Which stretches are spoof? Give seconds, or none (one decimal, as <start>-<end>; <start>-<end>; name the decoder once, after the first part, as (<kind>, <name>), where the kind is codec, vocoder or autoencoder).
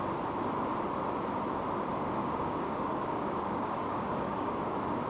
2.2-4.6 (codec, DAC)